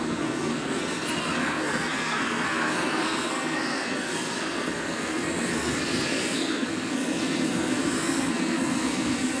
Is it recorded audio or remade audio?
remade